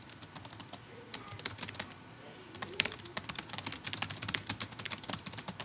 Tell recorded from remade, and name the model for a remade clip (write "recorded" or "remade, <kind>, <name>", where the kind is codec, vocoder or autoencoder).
recorded